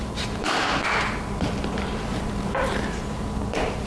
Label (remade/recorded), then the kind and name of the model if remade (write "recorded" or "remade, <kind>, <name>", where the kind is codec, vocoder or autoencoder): remade, vocoder, BigVGAN v2